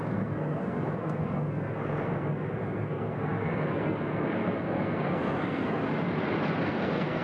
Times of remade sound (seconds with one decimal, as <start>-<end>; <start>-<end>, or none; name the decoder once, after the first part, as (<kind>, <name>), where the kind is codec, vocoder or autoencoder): 0.0-5.8 (codec, SNAC); 6.6-7.2